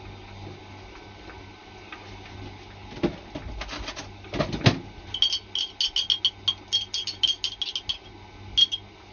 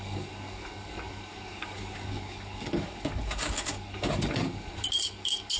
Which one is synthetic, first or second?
second